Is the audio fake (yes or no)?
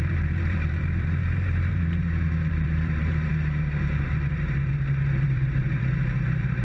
yes